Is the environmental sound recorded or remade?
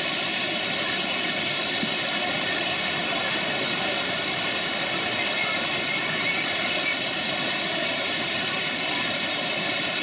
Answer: remade